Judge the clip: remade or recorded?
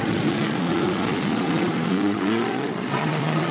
remade